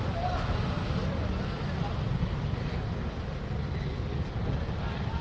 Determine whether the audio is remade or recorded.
recorded